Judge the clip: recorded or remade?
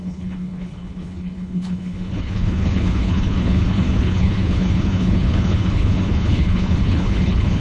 remade